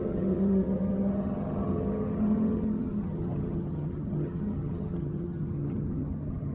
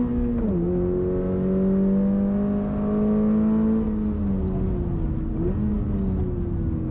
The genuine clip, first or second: second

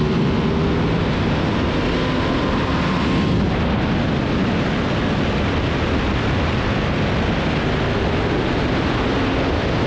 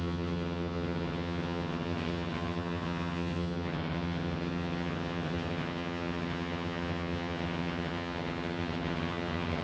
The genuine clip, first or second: first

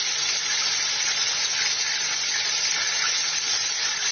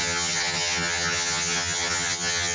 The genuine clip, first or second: first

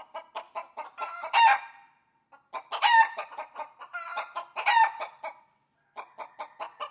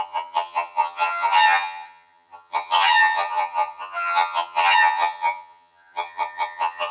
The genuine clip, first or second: first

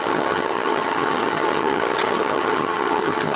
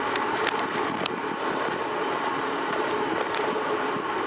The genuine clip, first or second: second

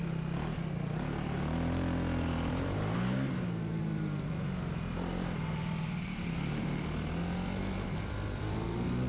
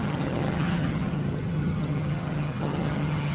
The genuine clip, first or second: first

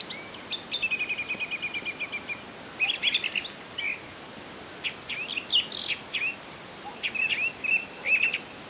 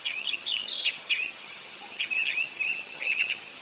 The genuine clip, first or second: first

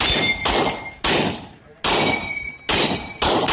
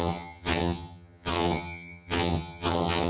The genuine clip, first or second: first